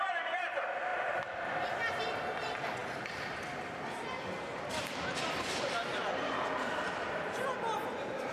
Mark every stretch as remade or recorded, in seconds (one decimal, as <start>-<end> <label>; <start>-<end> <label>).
0.0-8.3 recorded